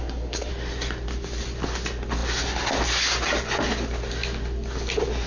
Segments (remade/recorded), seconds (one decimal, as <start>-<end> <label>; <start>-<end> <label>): 0.0-0.5 remade; 0.5-5.3 recorded